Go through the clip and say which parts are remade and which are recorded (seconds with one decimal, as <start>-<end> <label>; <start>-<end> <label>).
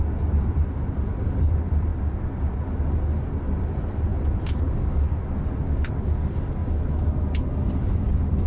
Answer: 0.0-8.5 recorded